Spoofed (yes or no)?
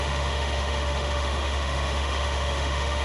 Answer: yes